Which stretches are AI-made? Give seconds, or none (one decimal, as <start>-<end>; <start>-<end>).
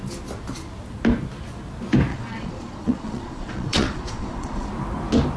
2.1-4.7